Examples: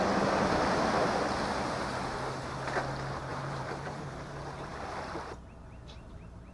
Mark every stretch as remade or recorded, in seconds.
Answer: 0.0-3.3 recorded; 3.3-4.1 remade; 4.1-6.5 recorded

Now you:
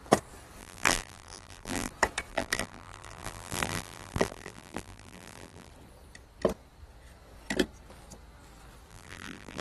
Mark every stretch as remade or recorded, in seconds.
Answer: 0.0-0.6 recorded; 0.6-1.9 remade; 1.9-2.3 recorded; 2.3-5.7 remade; 5.7-8.9 recorded; 8.9-9.6 remade

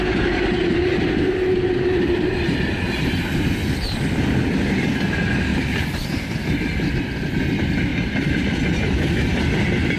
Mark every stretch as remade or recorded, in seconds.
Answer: 0.0-5.5 recorded; 5.5-6.4 remade; 6.4-7.9 recorded; 7.9-8.4 remade; 8.4-10.0 recorded

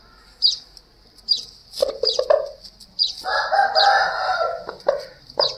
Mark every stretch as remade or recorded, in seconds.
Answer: 0.0-1.6 recorded; 1.6-2.2 remade; 2.2-2.8 recorded; 2.8-4.8 remade; 4.8-5.6 recorded

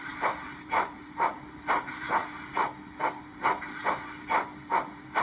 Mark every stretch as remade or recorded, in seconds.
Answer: 0.0-2.2 remade; 2.2-4.7 recorded; 4.7-5.2 remade

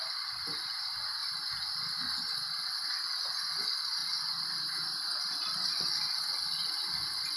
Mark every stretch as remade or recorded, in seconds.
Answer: 0.0-7.4 recorded

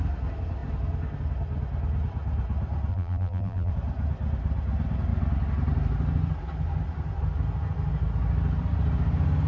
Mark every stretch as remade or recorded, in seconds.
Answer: 0.0-2.9 recorded; 2.9-3.7 remade; 3.7-9.5 recorded

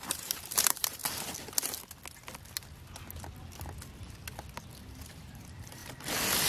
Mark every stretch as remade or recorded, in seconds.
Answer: 0.0-1.0 remade; 1.0-4.9 recorded; 4.9-5.8 remade; 5.8-6.5 recorded